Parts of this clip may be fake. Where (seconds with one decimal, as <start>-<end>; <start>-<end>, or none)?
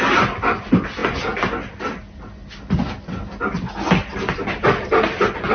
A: none